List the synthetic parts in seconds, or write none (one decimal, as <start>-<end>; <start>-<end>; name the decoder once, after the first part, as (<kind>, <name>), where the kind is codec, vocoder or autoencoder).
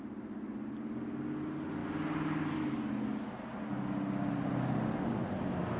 none